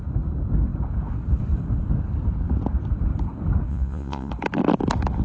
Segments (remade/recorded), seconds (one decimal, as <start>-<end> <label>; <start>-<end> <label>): 0.0-3.7 recorded; 3.7-4.3 remade; 4.3-5.2 recorded